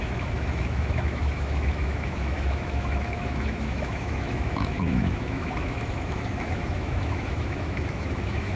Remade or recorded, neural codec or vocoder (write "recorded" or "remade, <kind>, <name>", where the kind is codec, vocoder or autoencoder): remade, autoencoder, DAC-VAE